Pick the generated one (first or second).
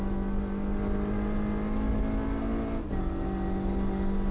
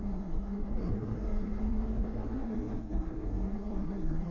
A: second